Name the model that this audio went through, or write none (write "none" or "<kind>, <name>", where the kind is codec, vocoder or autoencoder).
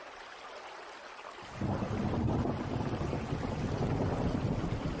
none